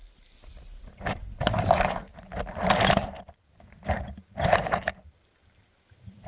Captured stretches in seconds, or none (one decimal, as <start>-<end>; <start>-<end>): 0.0-2.1

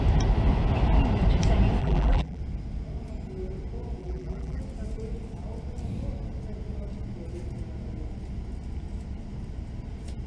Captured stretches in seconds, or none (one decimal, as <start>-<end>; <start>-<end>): 0.0-1.8; 2.4-4.0; 4.6-10.3